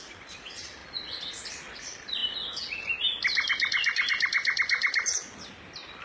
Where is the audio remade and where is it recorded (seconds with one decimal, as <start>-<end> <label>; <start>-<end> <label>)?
0.0-0.8 remade; 0.8-1.3 recorded; 1.3-2.2 remade; 2.2-6.0 recorded

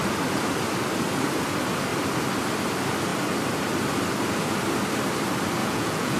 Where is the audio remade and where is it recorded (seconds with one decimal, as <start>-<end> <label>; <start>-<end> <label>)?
0.0-5.6 recorded; 5.6-6.2 remade

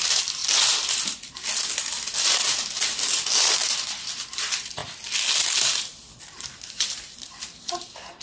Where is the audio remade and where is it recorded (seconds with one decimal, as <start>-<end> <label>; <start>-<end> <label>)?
0.0-0.4 remade; 0.4-3.1 recorded; 3.1-4.8 remade; 4.8-6.2 recorded; 6.2-8.2 remade

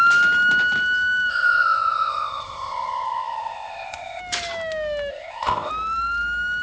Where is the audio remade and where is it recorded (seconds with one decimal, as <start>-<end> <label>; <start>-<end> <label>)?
0.0-1.3 recorded; 1.3-4.2 remade; 4.2-5.1 recorded; 5.1-5.7 remade; 5.7-6.6 recorded